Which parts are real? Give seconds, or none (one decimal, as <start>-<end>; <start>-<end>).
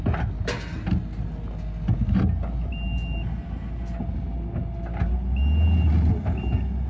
0.0-6.9